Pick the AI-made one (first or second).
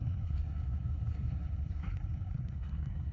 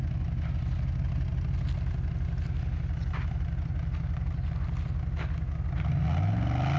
first